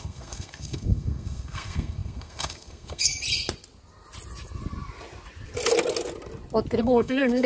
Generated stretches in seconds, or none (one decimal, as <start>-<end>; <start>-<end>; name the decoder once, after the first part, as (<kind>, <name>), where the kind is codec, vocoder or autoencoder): 0.0-3.1 (codec, SNAC); 6.8-7.5